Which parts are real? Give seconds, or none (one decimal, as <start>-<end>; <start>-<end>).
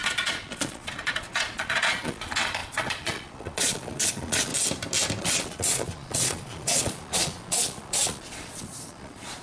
4.5-5.2